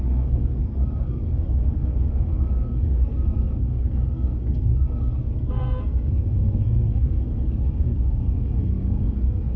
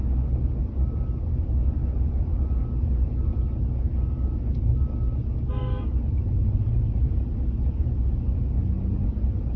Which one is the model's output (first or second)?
first